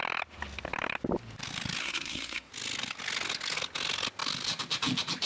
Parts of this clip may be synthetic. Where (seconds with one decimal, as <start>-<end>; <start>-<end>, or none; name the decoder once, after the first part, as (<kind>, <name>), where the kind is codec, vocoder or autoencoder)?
1.8-2.5 (codec, SNAC)